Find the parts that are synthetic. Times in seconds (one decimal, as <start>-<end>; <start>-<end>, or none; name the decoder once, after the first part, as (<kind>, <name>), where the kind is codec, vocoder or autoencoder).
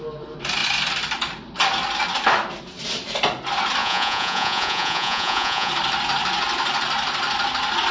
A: 3.8-5.7 (vocoder, Vocos)